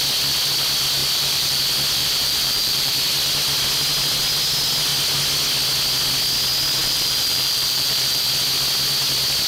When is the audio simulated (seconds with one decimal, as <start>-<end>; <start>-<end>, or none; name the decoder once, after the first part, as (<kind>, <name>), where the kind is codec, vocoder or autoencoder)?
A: 1.0-1.6 (vocoder, BigVGAN v2); 2.0-2.9; 6.8-8.3

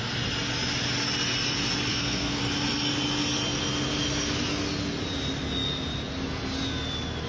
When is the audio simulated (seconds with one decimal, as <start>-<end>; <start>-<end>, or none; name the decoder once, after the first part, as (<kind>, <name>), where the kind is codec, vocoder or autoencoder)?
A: 1.9-2.4 (codec, SNAC)

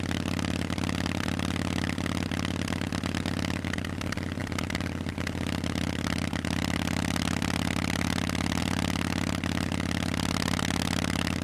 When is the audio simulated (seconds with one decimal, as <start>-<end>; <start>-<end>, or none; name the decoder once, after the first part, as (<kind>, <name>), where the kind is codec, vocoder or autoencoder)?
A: none

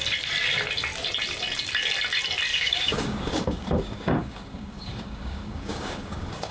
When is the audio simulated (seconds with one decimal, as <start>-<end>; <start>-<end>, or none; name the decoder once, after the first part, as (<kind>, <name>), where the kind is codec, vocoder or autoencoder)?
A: 2.5-6.5 (codec, DAC)